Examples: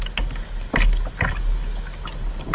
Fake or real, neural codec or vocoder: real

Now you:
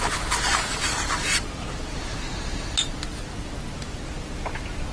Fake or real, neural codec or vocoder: real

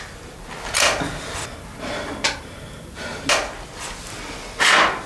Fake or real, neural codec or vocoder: real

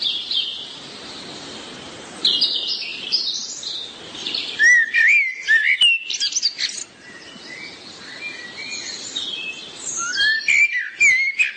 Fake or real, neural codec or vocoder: real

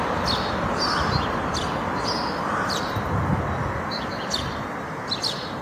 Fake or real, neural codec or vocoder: real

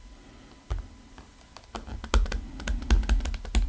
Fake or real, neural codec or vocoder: real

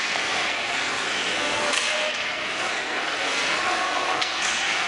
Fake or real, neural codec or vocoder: fake, codec, SNAC